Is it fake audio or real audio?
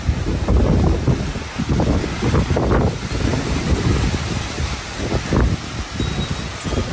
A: real